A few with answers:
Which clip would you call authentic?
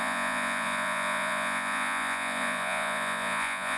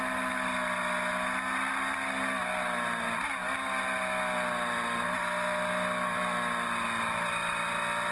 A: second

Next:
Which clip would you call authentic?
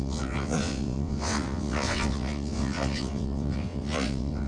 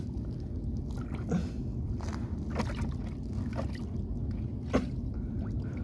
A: second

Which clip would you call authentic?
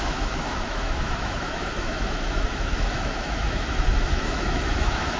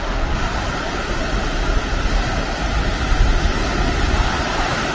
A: second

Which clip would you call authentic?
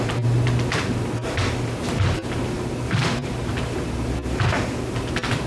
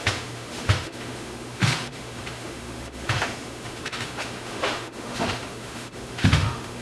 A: first